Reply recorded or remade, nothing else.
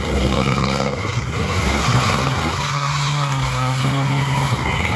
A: remade